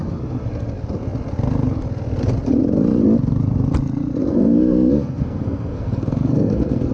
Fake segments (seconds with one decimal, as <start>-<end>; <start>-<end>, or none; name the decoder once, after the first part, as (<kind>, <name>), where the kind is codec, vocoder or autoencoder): 4.2-6.9 (codec, SNAC)

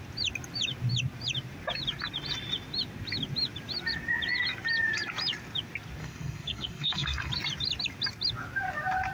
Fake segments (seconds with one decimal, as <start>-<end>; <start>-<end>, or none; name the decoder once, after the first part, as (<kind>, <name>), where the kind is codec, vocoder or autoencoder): 6.0-7.3 (codec, SNAC)

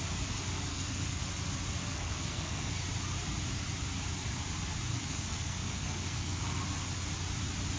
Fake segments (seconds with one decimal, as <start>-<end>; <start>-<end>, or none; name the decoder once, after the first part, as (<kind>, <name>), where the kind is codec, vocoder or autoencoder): 0.7-1.2 (codec, SNAC); 1.8-2.7; 4.9-6.6

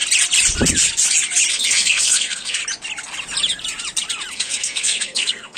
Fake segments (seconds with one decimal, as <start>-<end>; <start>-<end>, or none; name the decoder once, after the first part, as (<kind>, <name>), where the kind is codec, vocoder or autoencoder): 1.5-2.6 (codec, SNAC); 4.3-5.6

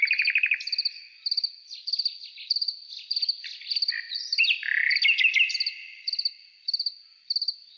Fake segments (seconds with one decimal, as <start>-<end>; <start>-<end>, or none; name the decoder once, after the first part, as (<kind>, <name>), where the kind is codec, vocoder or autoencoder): none

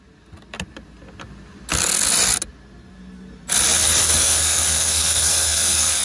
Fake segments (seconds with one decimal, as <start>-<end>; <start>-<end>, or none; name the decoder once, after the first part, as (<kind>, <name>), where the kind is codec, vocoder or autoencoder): 4.0-6.0 (codec, SNAC)

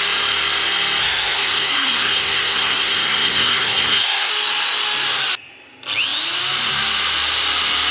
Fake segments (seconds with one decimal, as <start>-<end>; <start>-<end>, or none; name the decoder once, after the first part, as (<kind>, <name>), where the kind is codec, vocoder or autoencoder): 1.0-4.3 (codec, SNAC)

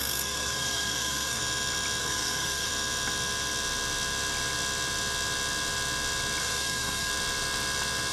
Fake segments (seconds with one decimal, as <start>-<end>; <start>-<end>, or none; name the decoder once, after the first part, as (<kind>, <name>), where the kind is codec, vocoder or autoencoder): 0.0-1.4 (codec, SNAC); 2.0-2.7; 6.4-7.1